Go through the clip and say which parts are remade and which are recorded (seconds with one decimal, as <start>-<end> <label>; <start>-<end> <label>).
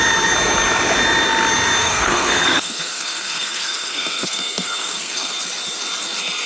0.0-1.8 recorded; 1.8-5.3 remade; 5.3-6.5 recorded